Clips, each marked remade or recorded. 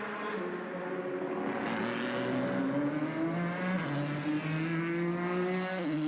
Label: recorded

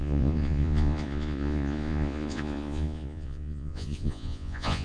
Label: remade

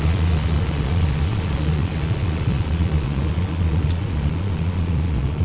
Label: remade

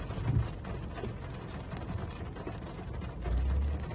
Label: recorded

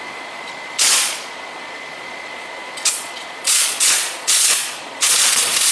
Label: remade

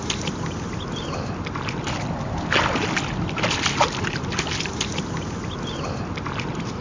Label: recorded